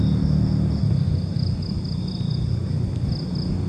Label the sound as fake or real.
real